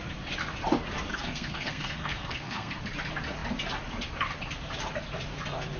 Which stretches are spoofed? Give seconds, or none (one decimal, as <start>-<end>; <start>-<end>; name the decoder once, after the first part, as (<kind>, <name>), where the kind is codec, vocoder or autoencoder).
1.1-2.8 (codec, SNAC)